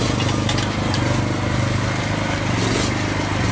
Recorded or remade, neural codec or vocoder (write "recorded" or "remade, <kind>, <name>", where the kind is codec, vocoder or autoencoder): recorded